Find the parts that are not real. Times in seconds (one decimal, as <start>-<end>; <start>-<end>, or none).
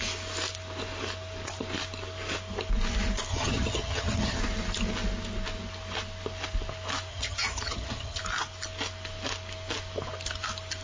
3.3-4.4; 7.1-8.2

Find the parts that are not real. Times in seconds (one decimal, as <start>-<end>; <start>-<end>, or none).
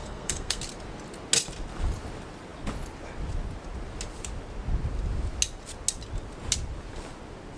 0.0-0.6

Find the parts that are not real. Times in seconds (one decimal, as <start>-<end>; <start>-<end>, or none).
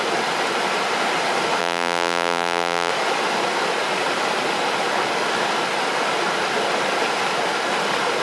1.6-2.9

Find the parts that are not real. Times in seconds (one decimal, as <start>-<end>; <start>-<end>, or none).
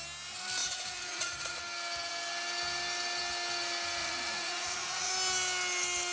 0.6-1.6; 4.0-5.1